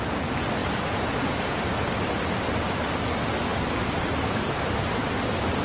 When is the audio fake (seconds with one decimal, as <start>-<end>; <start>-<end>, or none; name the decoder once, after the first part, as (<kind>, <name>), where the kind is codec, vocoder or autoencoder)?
0.6-1.6 (vocoder, Vocos)

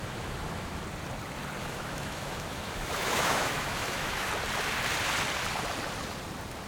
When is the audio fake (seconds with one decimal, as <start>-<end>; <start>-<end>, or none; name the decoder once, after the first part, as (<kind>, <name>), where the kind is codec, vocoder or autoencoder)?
0.0-0.8 (autoencoder, DAC-VAE); 1.6-4.3

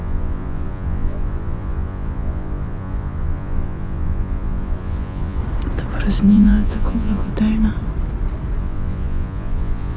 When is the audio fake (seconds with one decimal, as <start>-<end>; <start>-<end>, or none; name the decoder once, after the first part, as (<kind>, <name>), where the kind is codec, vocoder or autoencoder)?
0.0-5.4 (vocoder, Vocos); 6.2-7.3; 8.6-10.0

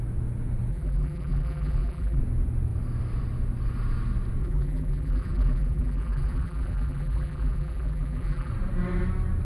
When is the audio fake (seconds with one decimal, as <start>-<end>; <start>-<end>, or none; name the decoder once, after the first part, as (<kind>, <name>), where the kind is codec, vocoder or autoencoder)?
0.7-2.2 (vocoder, BigVGAN v2); 4.4-8.5

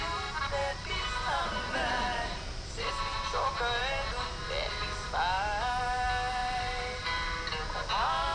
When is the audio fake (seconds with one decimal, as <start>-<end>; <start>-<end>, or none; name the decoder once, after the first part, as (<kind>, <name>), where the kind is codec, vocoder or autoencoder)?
0.6-2.9 (vocoder, BigVGAN v2); 6.4-7.9

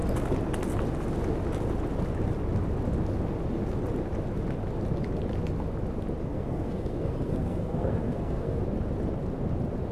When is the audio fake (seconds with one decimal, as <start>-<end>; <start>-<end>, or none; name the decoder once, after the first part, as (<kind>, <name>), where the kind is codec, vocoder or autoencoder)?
6.3-8.6 (codec, SNAC)

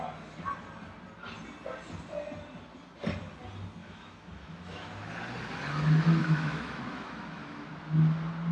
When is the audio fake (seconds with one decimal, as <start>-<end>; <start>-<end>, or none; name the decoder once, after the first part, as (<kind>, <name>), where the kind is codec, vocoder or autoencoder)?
3.8-4.9 (autoencoder, DAC-VAE); 6.2-7.7